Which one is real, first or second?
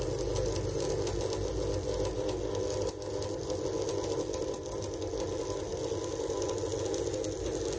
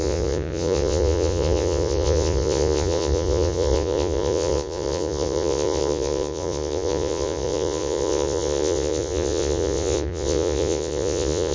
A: first